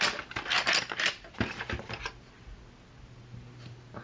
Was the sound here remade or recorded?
recorded